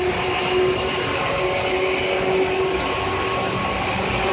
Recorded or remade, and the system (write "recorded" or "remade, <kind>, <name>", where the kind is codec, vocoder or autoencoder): recorded